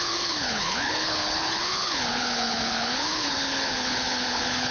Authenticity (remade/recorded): remade